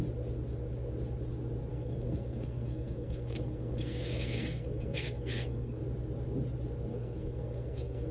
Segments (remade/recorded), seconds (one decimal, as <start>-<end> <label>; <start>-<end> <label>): 0.0-1.7 recorded; 1.7-5.8 remade; 5.8-6.9 recorded; 6.9-8.1 remade